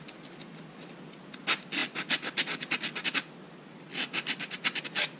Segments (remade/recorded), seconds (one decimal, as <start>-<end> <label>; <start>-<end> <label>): 0.0-5.2 recorded